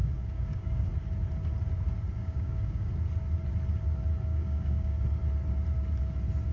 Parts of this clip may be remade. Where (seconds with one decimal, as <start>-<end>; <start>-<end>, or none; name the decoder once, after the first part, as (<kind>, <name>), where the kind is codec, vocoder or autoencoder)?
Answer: 0.0-0.9 (codec, DAC); 2.2-2.9; 4.3-5.0